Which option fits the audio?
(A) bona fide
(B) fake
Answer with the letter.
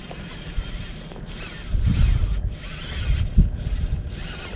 A